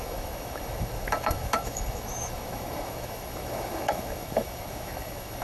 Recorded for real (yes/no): no